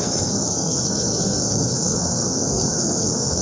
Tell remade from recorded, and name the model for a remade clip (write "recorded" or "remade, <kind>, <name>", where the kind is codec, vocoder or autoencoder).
remade, codec, SNAC